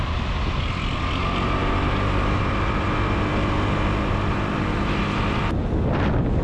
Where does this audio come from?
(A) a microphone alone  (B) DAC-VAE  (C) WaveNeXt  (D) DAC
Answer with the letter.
A